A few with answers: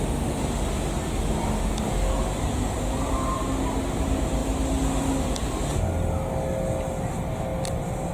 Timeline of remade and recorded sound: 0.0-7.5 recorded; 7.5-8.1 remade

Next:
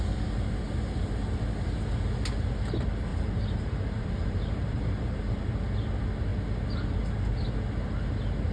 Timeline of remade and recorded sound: 0.0-3.1 recorded; 3.1-5.5 remade; 5.5-8.5 recorded